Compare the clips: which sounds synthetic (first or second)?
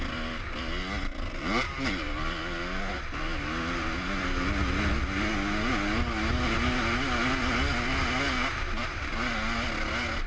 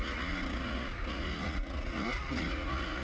second